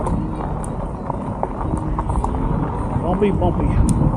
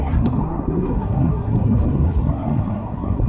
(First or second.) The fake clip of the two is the second